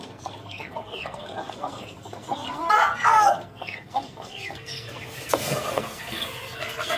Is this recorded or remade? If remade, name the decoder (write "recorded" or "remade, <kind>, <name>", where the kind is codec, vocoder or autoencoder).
remade, codec, SNAC